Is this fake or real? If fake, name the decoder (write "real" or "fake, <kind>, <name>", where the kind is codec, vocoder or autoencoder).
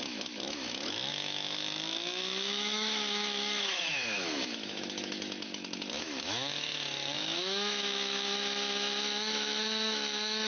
fake, autoencoder, DAC-VAE